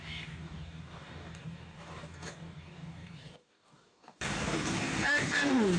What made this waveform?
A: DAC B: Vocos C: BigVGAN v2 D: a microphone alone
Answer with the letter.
A